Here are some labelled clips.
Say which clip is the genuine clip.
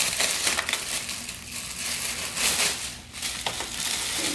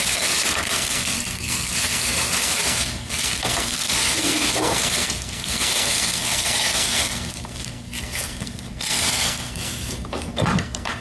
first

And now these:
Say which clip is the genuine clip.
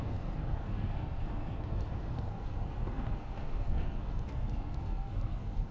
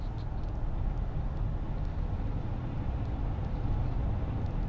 second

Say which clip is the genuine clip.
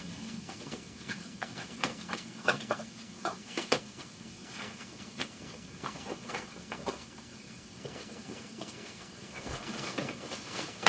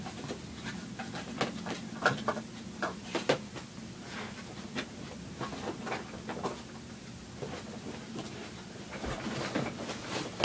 second